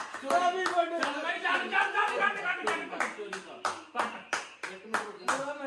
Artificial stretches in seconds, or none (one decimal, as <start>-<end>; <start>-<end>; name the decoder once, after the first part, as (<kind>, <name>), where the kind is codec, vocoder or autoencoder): none

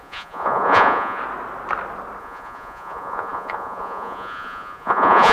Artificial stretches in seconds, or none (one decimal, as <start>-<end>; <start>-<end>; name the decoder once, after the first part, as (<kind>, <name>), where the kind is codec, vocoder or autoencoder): 0.0-1.2 (vocoder, Vocos); 2.2-5.3

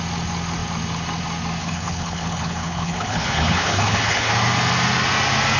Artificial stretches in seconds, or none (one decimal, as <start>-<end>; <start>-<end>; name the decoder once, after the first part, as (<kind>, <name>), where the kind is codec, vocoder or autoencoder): 1.6-4.3 (codec, HILCodec)

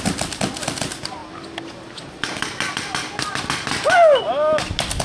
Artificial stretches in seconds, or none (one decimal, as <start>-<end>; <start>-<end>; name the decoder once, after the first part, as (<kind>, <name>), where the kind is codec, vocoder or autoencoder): none

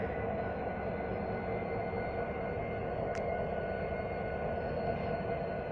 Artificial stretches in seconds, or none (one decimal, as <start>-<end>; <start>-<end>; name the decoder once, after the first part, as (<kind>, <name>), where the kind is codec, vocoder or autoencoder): none